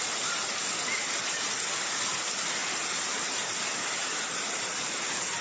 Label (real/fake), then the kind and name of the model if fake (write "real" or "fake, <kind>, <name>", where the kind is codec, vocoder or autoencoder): real